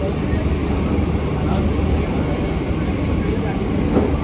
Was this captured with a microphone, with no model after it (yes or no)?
yes